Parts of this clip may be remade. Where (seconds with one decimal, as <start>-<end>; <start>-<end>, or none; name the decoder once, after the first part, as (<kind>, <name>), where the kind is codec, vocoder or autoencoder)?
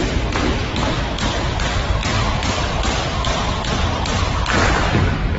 0.6-1.3 (autoencoder, DAC-VAE)